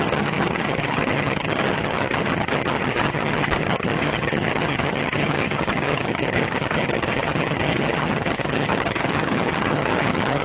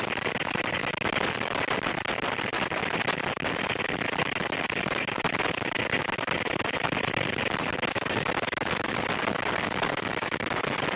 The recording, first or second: second